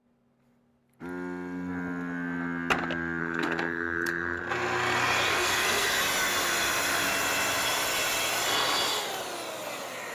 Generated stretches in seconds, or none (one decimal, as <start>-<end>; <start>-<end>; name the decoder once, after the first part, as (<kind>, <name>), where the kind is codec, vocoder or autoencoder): 3.2-4.4 (codec, SNAC); 5.3-6.0